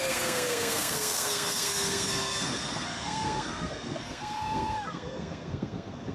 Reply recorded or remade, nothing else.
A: remade